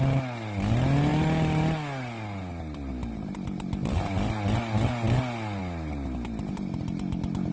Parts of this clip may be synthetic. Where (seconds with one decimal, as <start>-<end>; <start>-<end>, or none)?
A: none